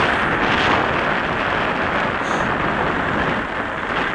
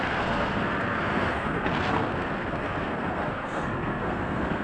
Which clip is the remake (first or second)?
second